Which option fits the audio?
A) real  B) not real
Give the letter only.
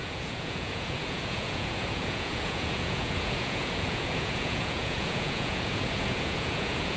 B